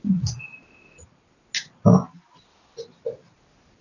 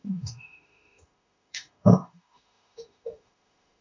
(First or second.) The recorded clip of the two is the first